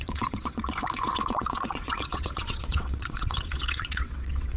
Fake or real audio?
fake